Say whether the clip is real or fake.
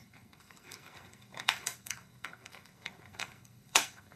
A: fake